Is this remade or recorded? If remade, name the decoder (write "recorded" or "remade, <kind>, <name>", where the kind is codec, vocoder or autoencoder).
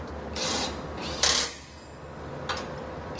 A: recorded